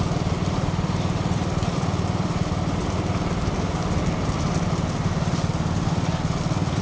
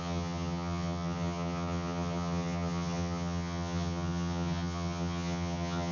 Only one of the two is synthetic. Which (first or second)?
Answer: second